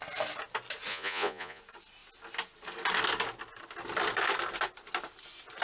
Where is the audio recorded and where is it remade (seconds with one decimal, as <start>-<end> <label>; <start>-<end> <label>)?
0.0-0.9 recorded; 0.9-1.6 remade; 1.6-5.6 recorded